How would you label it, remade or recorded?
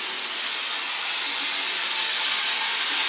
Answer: recorded